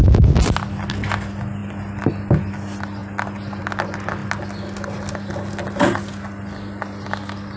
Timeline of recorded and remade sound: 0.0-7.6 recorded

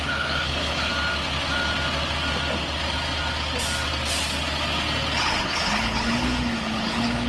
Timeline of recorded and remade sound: 0.0-0.9 remade; 0.9-5.2 recorded; 5.2-7.3 remade

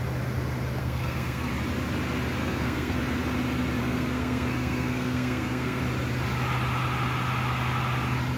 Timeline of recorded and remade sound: 0.0-0.8 recorded; 0.8-1.5 remade; 1.5-2.4 recorded; 2.4-3.0 remade; 3.0-3.8 recorded; 3.8-5.8 remade; 5.8-8.4 recorded

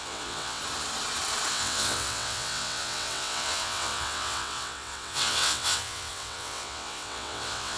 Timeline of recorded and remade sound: 0.0-0.6 remade; 0.6-1.5 recorded; 1.5-7.8 remade

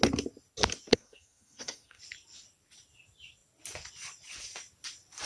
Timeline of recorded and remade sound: 0.0-0.9 recorded; 0.9-2.0 remade; 2.0-5.3 recorded

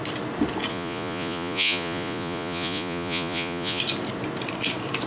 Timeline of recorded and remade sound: 0.0-0.7 recorded; 0.7-3.8 remade; 3.8-5.1 recorded

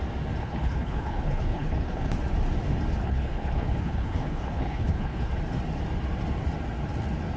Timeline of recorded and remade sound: 0.0-0.4 recorded; 0.4-2.1 remade; 2.1-3.0 recorded; 3.0-5.3 remade; 5.3-7.4 recorded